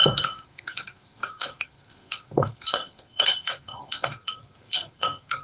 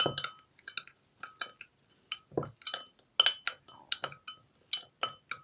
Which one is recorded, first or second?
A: second